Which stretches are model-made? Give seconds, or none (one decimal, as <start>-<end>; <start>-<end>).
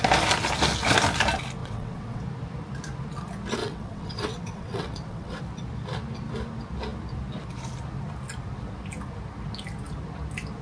1.6-2.2; 3.6-5.4